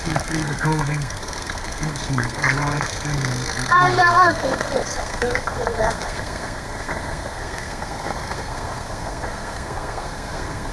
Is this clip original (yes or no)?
no